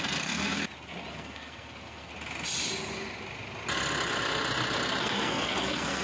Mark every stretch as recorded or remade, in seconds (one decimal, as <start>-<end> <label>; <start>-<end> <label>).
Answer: 0.0-0.6 remade; 0.6-1.1 recorded; 1.1-2.1 remade; 2.1-5.0 recorded; 5.0-6.0 remade